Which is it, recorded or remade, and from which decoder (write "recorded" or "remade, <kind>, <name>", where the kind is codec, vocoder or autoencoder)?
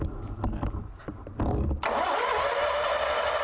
recorded